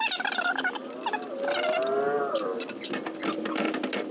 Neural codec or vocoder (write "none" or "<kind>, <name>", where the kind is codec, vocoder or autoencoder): none